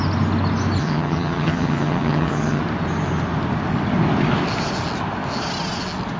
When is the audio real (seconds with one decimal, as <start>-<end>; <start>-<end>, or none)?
0.0-0.8; 2.6-6.2